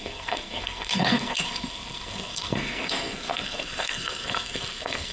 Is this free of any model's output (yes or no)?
no